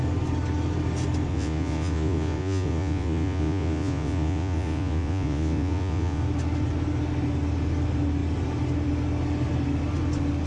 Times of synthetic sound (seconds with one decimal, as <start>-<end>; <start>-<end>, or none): 1.3-6.2